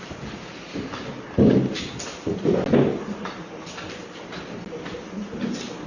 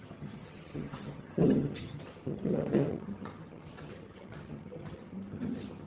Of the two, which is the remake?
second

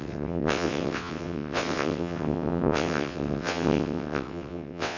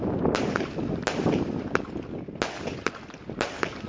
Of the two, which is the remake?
first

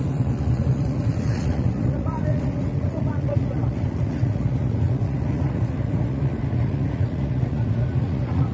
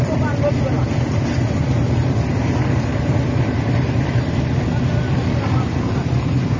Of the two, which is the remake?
first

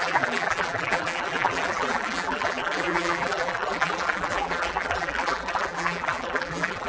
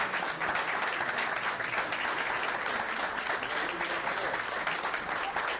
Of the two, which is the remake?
first